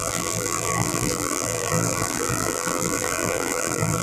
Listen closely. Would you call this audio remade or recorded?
remade